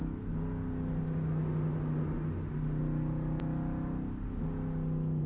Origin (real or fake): real